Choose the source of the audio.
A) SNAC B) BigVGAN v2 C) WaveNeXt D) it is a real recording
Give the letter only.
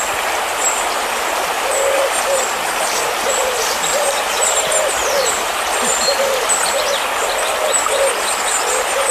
D